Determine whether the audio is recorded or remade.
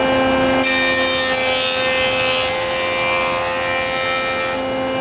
recorded